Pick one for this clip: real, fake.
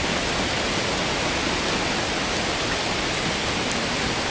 real